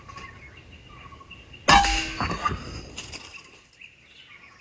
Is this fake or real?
real